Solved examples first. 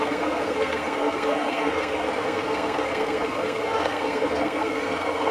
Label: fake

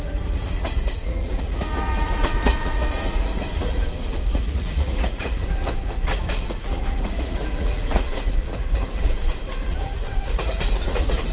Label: fake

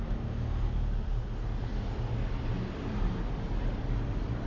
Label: real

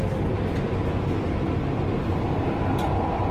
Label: real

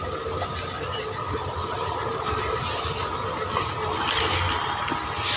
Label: real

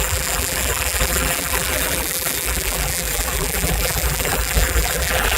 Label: fake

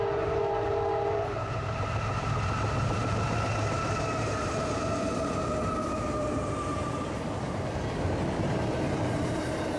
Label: fake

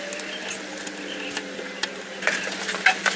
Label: real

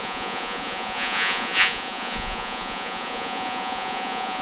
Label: fake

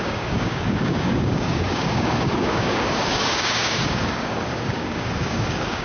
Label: fake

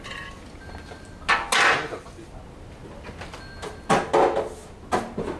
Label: real